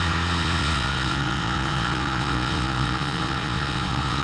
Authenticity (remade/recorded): remade